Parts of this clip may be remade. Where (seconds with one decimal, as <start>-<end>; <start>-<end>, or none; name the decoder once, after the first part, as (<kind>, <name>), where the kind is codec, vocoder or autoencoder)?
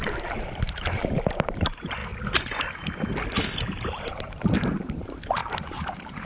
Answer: 0.0-2.0 (vocoder, BigVGAN v2); 4.1-6.3